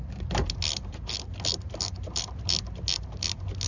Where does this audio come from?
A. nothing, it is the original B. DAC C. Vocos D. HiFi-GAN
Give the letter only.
A